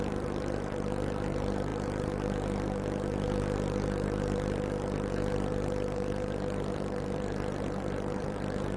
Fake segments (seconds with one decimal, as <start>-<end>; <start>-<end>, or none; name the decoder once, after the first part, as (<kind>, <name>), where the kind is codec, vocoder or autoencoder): 0.0-8.8 (vocoder, BigVGAN v2)